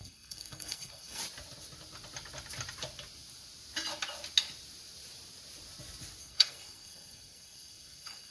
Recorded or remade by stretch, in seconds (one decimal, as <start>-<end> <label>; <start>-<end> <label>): 0.0-1.2 remade; 1.2-6.2 recorded; 6.2-8.3 remade